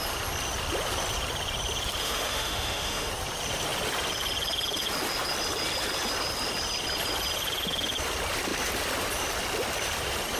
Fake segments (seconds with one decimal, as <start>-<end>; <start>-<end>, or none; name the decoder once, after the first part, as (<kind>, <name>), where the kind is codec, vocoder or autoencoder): 2.0-3.1 (autoencoder, DAC-VAE)